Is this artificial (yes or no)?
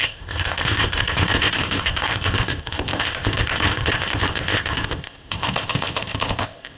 yes